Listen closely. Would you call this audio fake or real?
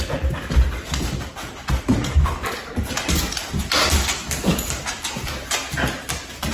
real